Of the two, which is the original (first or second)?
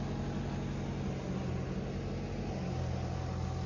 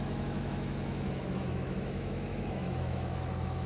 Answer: first